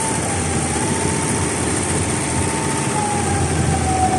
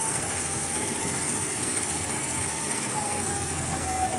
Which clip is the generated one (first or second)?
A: second